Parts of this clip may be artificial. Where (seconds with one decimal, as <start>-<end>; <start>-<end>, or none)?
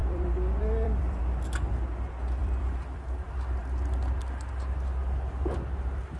0.0-1.2; 2.4-3.0